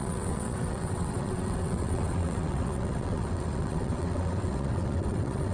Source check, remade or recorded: remade